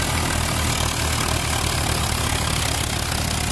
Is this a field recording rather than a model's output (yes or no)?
yes